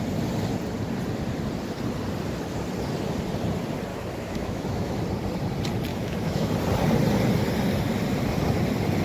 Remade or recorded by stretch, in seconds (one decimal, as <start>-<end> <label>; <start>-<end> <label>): 0.0-3.9 recorded; 3.9-5.0 remade; 5.0-5.9 recorded; 5.9-6.5 remade; 6.5-9.0 recorded

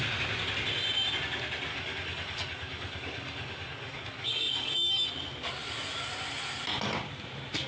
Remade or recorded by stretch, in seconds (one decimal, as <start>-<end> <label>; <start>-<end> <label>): 0.0-1.7 recorded; 1.7-5.1 remade; 5.1-7.7 recorded

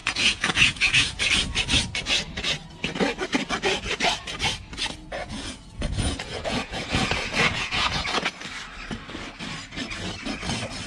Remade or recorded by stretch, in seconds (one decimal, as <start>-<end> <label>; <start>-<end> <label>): 0.0-1.3 remade; 1.3-5.2 recorded; 5.2-8.3 remade; 8.3-10.9 recorded

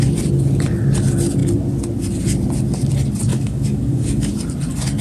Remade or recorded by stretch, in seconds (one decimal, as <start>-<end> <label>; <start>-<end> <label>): 0.0-3.3 recorded; 3.3-4.3 remade; 4.3-5.0 recorded

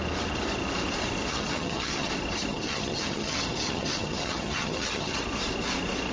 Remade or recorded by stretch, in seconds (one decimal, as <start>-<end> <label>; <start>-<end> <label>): 0.0-1.3 recorded; 1.3-2.1 remade; 2.1-2.5 recorded; 2.5-5.2 remade; 5.2-6.1 recorded

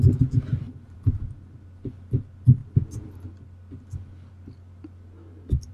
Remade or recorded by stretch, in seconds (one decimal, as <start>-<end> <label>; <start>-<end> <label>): 0.0-0.5 recorded; 0.5-1.2 remade; 1.2-5.7 recorded

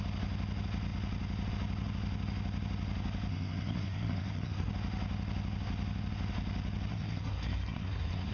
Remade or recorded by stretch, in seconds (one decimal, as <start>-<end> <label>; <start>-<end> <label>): 0.0-3.3 recorded; 3.3-4.7 remade; 4.7-6.9 recorded; 6.9-8.3 remade

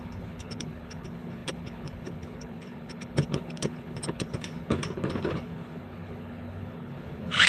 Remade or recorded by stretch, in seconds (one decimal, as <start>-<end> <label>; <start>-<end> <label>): 0.0-7.5 remade